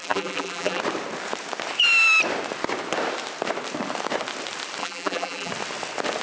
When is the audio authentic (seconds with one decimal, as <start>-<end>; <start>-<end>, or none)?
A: 0.8-4.8; 5.5-6.2